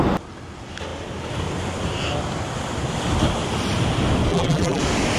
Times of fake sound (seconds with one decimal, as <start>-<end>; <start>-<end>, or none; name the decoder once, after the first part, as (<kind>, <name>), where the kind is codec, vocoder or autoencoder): 4.3-4.8 (vocoder, BigVGAN v2)